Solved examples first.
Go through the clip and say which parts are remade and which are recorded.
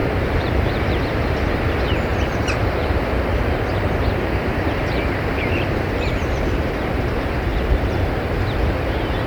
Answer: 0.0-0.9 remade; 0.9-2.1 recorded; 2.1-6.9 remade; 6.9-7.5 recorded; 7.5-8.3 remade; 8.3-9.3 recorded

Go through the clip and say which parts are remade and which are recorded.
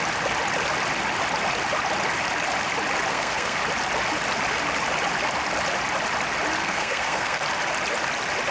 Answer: 0.0-3.1 recorded; 3.1-3.6 remade; 3.6-6.6 recorded; 6.6-7.4 remade; 7.4-8.5 recorded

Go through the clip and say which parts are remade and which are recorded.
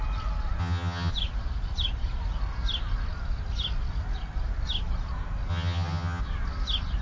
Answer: 0.0-0.6 recorded; 0.6-1.1 remade; 1.1-5.5 recorded; 5.5-6.2 remade; 6.2-7.0 recorded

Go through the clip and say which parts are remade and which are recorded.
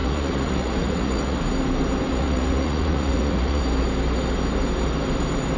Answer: 0.0-1.4 remade; 1.4-2.1 recorded; 2.1-3.6 remade; 3.6-5.6 recorded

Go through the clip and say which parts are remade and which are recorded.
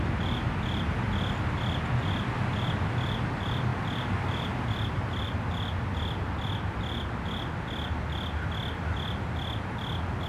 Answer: 0.0-10.3 recorded